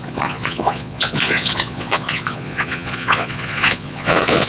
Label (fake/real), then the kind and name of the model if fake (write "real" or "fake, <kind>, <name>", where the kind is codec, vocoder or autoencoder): fake, vocoder, Vocos